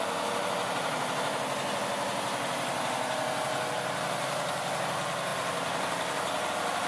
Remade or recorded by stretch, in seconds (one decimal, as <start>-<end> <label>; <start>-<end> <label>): 0.0-5.3 recorded; 5.3-6.5 remade; 6.5-6.9 recorded

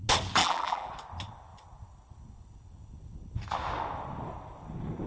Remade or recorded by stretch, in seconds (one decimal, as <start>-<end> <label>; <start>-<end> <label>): 0.0-0.4 recorded; 0.4-0.9 remade; 0.9-5.1 recorded

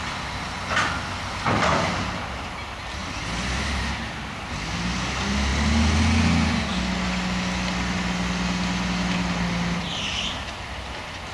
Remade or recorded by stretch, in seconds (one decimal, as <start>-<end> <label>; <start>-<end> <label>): 0.0-11.3 recorded

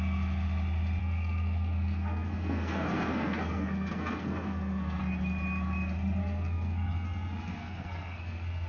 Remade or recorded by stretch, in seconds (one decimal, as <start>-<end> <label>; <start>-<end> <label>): 0.0-1.0 recorded; 1.0-5.0 remade; 5.0-6.2 recorded; 6.2-8.7 remade

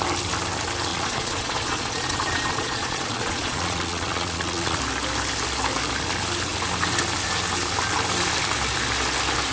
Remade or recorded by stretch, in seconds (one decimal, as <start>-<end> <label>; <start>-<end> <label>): 0.0-0.9 recorded; 0.9-4.8 remade; 4.8-9.5 recorded

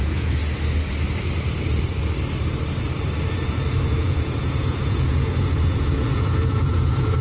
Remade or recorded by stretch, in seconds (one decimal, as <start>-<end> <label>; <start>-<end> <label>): 0.0-0.4 remade; 0.4-3.9 recorded; 3.9-7.2 remade

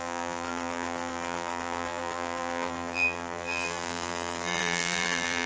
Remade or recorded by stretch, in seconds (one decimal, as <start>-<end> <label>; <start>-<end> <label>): 0.0-5.5 remade